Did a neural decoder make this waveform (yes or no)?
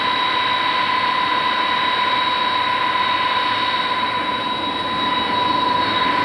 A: no